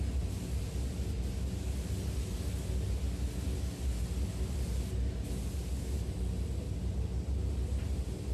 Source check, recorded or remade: recorded